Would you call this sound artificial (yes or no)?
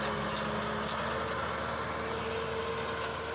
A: no